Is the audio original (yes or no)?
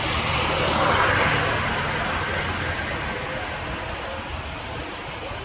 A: yes